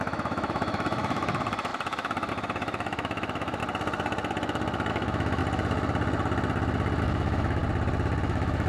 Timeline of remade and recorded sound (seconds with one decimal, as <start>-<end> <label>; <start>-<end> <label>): 0.0-3.6 remade; 3.6-4.9 recorded; 4.9-5.4 remade; 5.4-7.0 recorded; 7.0-7.6 remade; 7.6-8.2 recorded; 8.2-8.7 remade